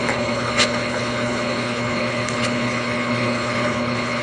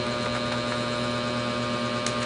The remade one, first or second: first